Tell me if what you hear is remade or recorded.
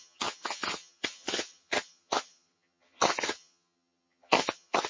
remade